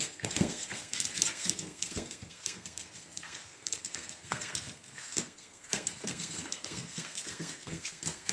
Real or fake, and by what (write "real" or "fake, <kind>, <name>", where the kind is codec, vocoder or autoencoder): fake, codec, SNAC